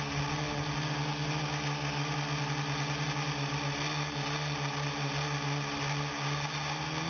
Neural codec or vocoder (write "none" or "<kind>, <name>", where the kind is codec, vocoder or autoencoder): none